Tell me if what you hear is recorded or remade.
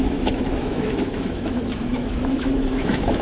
remade